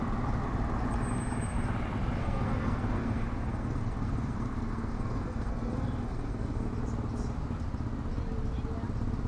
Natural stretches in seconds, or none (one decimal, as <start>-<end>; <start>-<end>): 0.0-2.2; 6.7-9.3